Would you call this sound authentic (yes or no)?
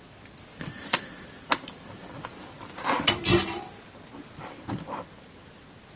yes